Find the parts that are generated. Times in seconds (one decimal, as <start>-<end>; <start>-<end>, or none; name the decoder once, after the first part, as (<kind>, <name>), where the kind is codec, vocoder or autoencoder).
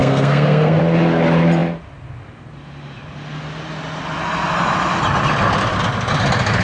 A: 0.0-0.8 (codec, SNAC)